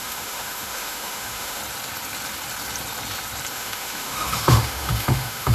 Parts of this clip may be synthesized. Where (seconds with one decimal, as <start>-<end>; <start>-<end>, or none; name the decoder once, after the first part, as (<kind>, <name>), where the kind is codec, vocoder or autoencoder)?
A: 0.0-1.6 (autoencoder, DAC-VAE); 3.5-5.5